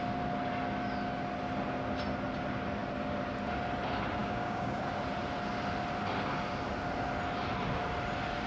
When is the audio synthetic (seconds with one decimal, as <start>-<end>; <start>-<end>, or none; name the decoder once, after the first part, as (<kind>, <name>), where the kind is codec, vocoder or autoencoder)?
4.2-4.8 (codec, DAC)